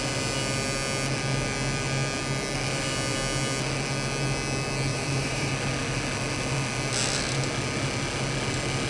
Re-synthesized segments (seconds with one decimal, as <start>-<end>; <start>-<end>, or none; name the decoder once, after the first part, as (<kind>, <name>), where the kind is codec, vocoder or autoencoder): 4.9-5.5 (vocoder, BigVGAN v2)